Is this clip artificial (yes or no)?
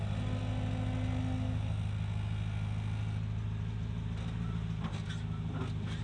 no